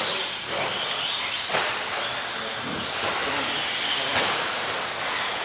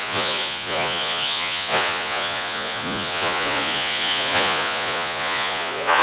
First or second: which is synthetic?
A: second